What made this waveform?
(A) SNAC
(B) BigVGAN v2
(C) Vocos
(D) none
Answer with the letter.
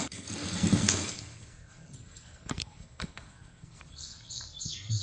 A